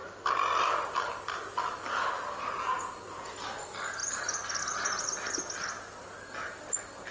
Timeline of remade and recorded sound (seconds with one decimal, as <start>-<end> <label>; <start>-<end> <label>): 0.0-7.1 recorded